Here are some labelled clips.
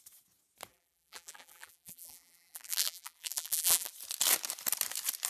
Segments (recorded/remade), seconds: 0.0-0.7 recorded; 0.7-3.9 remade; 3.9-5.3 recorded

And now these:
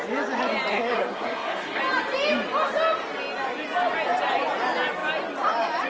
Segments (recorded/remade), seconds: 0.0-0.7 recorded; 0.7-1.8 remade; 1.8-5.9 recorded

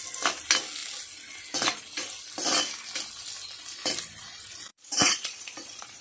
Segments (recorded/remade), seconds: 0.0-4.7 recorded; 4.7-6.0 remade

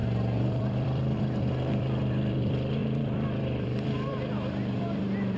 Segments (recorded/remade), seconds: 0.0-5.4 remade

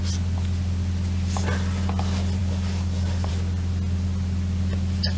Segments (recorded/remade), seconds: 0.0-2.4 recorded; 2.4-3.3 remade; 3.3-5.2 recorded